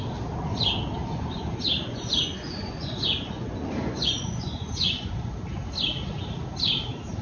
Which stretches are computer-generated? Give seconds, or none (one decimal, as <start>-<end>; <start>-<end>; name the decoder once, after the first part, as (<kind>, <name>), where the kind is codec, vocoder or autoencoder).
1.0-5.3 (vocoder, Vocos)